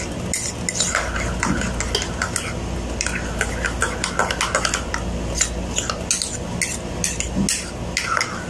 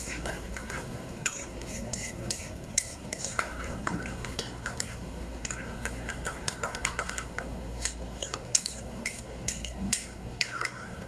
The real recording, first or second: first